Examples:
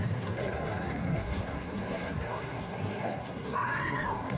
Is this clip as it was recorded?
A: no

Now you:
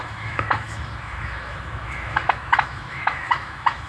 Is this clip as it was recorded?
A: no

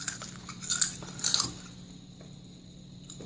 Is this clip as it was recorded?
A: yes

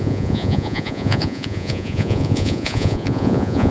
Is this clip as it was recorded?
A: no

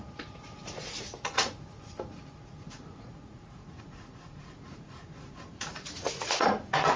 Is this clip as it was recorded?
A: no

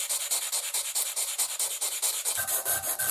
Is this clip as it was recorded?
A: no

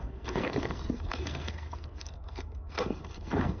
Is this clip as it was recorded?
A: no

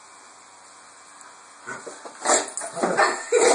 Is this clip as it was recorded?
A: yes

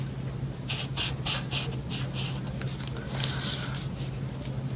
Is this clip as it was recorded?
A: yes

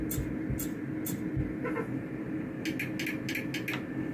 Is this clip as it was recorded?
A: yes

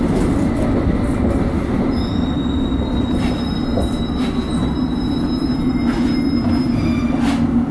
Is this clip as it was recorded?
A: yes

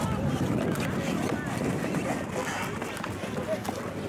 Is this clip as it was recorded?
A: yes